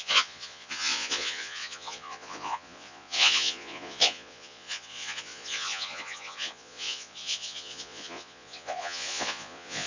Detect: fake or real fake